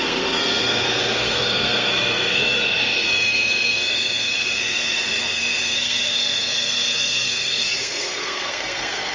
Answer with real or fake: fake